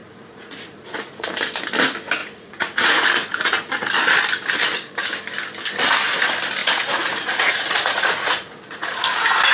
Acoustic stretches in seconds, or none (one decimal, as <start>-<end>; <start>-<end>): 1.3-2.2; 3.9-6.6; 9.0-9.5